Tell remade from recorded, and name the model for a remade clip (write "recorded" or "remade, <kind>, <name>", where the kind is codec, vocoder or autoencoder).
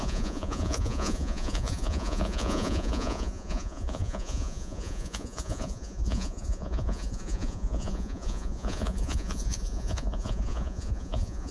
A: remade, vocoder, Vocos